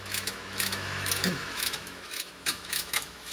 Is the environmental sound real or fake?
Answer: fake